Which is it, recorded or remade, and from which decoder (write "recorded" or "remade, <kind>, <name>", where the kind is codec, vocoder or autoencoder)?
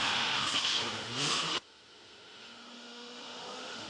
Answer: remade, autoencoder, DAC-VAE